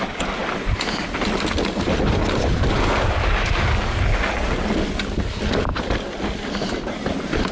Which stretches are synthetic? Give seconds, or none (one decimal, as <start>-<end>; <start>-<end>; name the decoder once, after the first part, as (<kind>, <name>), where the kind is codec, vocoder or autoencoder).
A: none